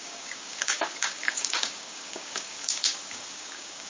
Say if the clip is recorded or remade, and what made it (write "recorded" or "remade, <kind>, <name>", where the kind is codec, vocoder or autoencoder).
remade, codec, DAC